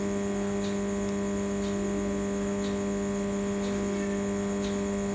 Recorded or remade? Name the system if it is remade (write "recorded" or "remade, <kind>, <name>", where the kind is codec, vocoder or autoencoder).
recorded